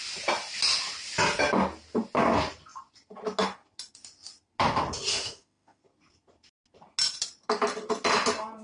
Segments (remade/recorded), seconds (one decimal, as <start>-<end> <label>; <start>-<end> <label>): 0.0-5.1 recorded; 5.1-5.8 remade; 5.8-8.6 recorded